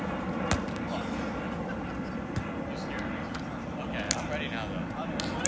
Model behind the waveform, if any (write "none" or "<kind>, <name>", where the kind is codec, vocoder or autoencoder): none